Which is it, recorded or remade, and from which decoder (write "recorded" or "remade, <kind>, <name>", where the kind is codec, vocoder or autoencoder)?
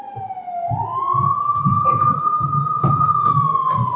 recorded